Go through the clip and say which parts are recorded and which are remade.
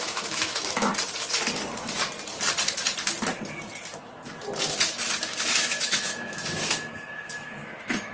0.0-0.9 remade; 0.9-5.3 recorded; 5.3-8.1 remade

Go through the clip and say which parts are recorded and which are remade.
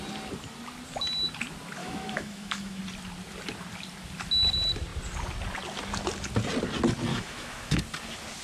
0.0-1.8 recorded; 1.8-2.8 remade; 2.8-7.1 recorded; 7.1-7.8 remade; 7.8-8.4 recorded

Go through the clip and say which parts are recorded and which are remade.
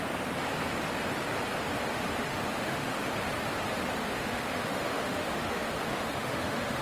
0.0-2.3 recorded; 2.3-3.0 remade; 3.0-4.0 recorded; 4.0-6.8 remade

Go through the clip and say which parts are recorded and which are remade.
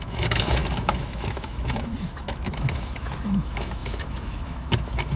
0.0-5.2 remade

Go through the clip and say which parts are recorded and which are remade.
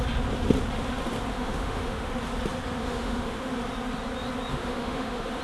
0.0-1.3 recorded; 1.3-2.1 remade; 2.1-2.8 recorded; 2.8-3.5 remade; 3.5-4.5 recorded; 4.5-5.4 remade